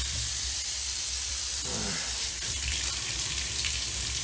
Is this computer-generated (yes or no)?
yes